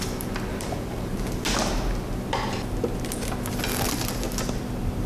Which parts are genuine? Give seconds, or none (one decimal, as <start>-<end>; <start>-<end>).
0.0-0.5; 1.3-5.1